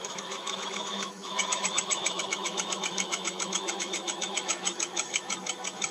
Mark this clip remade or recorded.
remade